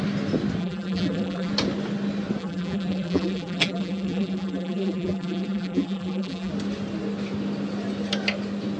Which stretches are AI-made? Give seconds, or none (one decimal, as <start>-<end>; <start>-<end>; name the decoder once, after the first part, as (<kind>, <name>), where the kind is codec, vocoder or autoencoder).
0.6-1.5 (vocoder, BigVGAN v2); 2.4-6.5